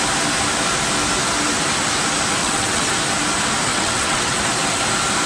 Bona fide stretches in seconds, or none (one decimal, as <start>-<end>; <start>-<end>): 0.0-2.4; 2.9-3.7; 4.4-5.3